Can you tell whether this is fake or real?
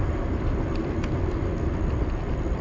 real